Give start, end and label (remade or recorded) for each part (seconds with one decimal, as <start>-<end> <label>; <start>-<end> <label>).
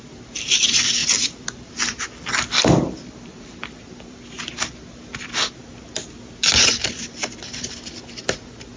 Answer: 0.0-1.0 recorded; 1.0-4.8 remade; 4.8-6.6 recorded; 6.6-7.5 remade; 7.5-8.8 recorded